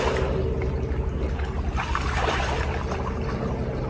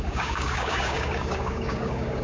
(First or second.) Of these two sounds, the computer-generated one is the second